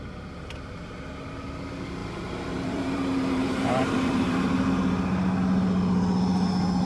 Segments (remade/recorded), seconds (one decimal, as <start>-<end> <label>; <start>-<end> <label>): 0.0-2.0 recorded; 2.0-4.5 remade; 4.5-6.8 recorded